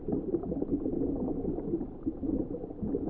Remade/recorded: recorded